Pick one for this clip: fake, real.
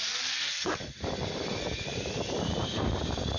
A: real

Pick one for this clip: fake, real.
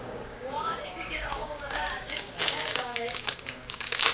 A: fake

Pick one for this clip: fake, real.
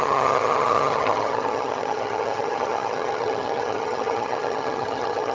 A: fake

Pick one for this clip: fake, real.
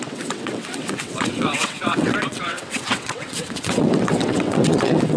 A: fake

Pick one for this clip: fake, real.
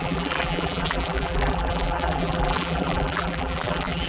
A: fake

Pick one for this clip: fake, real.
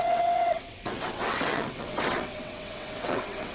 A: fake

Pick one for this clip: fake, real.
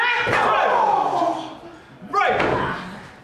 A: real